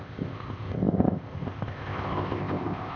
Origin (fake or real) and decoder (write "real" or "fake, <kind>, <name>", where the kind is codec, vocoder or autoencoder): fake, codec, ZipCodec